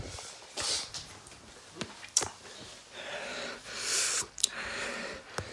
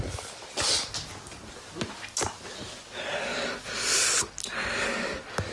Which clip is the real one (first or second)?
second